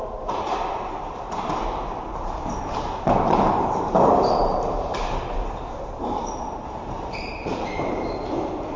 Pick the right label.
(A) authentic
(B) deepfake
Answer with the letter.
B